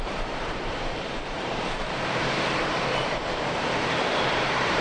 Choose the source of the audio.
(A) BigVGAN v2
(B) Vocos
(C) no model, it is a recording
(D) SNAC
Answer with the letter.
A